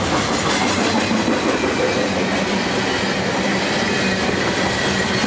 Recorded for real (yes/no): yes